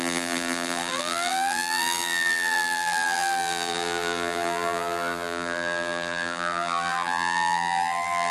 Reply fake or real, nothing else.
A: fake